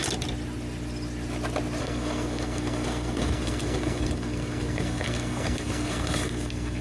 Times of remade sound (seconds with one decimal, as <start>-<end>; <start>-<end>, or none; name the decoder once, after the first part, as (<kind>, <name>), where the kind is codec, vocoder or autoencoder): 1.8-6.8 (codec, SNAC)